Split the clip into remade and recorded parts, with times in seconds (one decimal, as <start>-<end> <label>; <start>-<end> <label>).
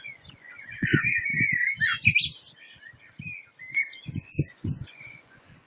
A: 0.0-1.3 remade; 1.3-3.7 recorded; 3.7-5.7 remade